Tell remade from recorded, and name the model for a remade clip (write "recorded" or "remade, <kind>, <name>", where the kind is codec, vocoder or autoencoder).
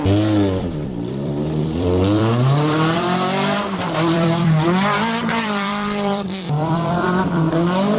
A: remade, vocoder, BigVGAN v2